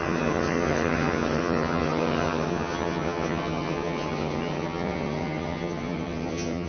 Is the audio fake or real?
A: fake